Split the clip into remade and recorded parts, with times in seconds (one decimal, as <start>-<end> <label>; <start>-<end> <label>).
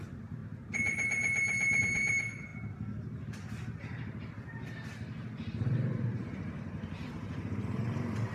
0.0-0.4 remade; 0.4-1.8 recorded; 1.8-8.3 remade